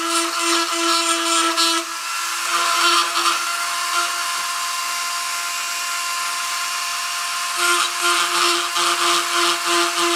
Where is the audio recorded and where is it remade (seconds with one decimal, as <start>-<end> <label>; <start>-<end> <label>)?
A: 0.0-10.2 recorded